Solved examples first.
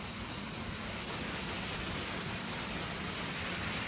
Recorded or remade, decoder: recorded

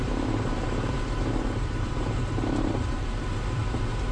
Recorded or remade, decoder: remade, vocoder, BigVGAN v2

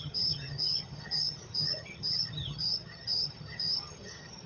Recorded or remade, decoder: remade, vocoder, HiFi-GAN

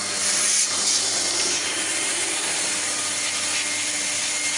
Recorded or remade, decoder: recorded